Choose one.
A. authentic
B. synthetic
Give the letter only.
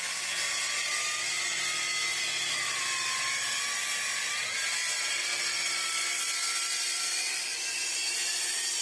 A